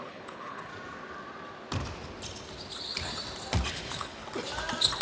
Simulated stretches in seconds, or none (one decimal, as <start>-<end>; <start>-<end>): 0.0-0.7; 3.7-4.2